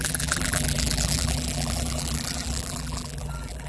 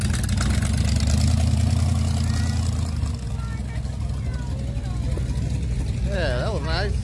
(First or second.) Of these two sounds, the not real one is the first